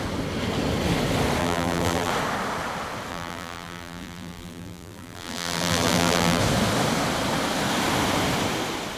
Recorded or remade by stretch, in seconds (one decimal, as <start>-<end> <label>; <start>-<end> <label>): 0.0-1.4 recorded; 1.4-2.1 remade; 2.1-3.1 recorded; 3.1-6.4 remade; 6.4-9.0 recorded